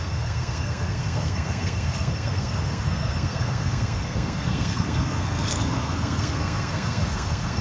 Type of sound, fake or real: fake